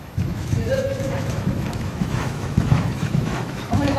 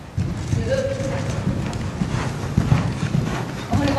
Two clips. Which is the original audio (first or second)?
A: second